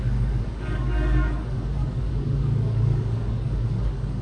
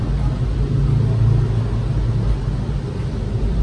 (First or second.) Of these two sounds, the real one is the second